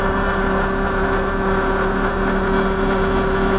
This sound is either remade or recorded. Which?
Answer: recorded